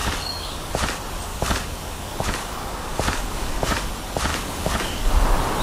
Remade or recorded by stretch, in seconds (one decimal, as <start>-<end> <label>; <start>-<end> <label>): 0.0-0.7 remade; 0.7-1.3 recorded; 1.3-3.9 remade; 3.9-4.3 recorded; 4.3-5.1 remade; 5.1-5.6 recorded